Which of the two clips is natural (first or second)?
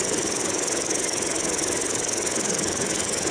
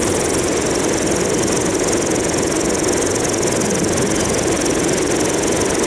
second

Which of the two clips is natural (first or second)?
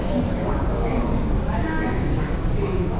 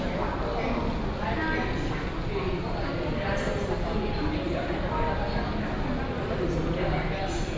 second